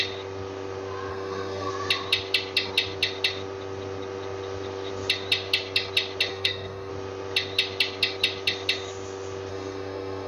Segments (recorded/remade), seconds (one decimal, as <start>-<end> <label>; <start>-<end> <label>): 0.0-1.1 recorded; 1.1-1.7 remade; 1.7-6.3 recorded; 6.3-6.9 remade; 6.9-9.5 recorded; 9.5-10.3 remade